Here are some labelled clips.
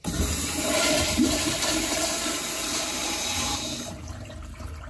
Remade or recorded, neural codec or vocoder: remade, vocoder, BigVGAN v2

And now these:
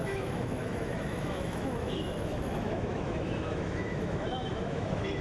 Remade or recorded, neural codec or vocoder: remade, autoencoder, DAC-VAE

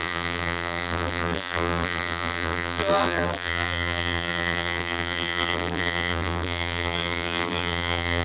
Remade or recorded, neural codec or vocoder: remade, vocoder, BigVGAN v2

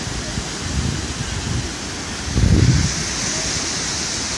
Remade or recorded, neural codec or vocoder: recorded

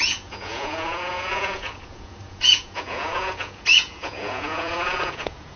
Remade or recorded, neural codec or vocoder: remade, vocoder, Vocos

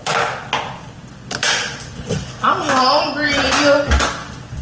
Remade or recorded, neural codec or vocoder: recorded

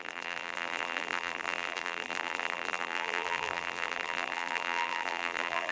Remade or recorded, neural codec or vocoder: remade, vocoder, BigVGAN v2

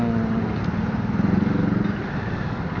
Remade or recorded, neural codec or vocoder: recorded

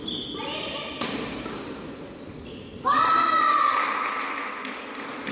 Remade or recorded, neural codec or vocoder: recorded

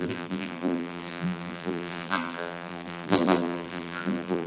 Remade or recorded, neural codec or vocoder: remade, vocoder, BigVGAN v2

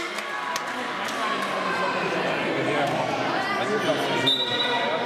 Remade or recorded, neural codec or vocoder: recorded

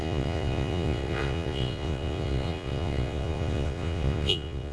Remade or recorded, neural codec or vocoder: remade, vocoder, Vocos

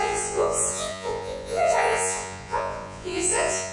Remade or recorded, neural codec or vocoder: remade, vocoder, Vocos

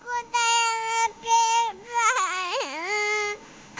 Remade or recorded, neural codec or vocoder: remade, autoencoder, DAC-VAE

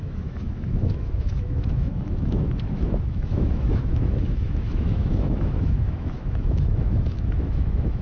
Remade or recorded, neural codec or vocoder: remade, autoencoder, DAC-VAE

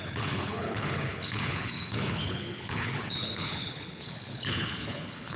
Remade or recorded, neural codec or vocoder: remade, codec, HILCodec